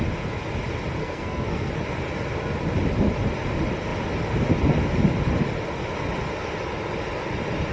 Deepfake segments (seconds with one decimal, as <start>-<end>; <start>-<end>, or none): 1.0-1.7

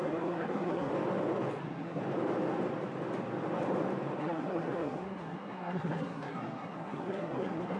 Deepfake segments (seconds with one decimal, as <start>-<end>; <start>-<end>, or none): 0.0-0.9; 1.6-2.0; 4.2-7.8

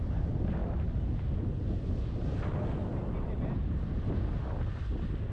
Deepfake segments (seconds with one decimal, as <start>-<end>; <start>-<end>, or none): none